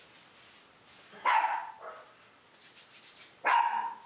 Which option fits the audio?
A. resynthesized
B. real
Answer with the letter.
B